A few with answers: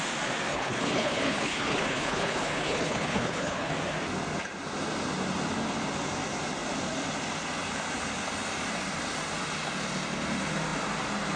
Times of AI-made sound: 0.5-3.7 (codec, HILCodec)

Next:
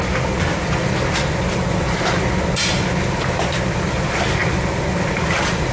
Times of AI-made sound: none

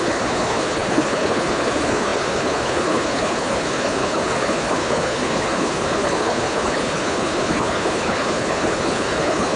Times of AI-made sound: 0.0-9.6 (codec, HILCodec)